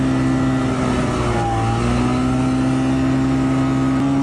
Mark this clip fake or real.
real